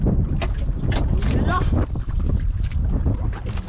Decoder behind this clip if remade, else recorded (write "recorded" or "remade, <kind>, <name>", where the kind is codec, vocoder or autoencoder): recorded